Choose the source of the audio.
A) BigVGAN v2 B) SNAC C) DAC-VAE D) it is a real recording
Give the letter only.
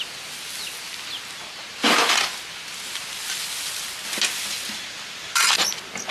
D